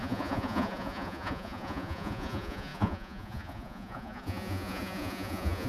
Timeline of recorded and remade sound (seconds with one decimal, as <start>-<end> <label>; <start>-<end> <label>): 0.0-5.7 remade